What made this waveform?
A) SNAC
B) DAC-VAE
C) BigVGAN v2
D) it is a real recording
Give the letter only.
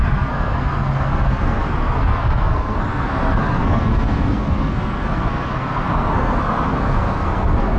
A